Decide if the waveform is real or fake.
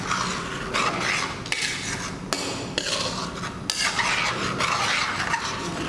real